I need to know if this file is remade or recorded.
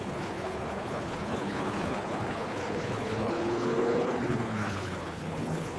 remade